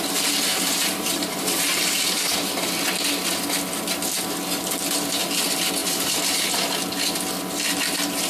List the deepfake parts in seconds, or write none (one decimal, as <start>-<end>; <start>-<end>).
0.5-2.8; 5.8-6.6